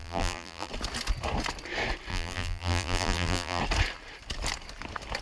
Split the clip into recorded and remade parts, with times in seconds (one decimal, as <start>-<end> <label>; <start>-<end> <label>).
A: 0.0-0.7 remade; 0.7-2.1 recorded; 2.1-3.6 remade; 3.6-5.2 recorded